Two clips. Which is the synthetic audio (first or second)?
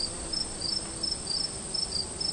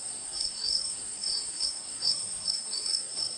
second